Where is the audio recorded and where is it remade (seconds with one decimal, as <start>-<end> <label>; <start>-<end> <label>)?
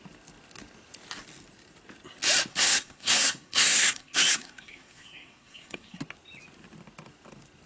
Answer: 0.0-2.5 recorded; 2.5-6.0 remade; 6.0-7.7 recorded